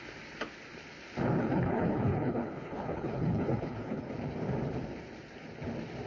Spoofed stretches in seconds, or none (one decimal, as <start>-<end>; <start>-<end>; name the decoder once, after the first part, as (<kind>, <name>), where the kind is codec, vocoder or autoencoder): 1.4-4.1 (codec, HILCodec)